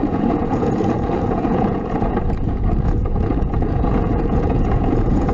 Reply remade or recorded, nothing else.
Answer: remade